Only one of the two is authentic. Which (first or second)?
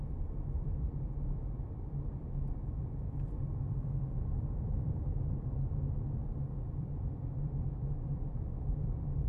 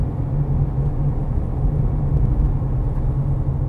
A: second